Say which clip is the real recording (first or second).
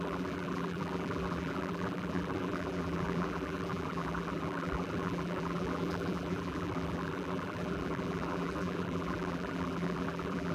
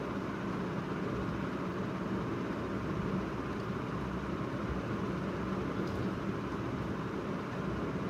second